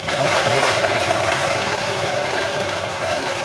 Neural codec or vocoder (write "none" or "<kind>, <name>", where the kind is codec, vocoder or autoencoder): codec, SNAC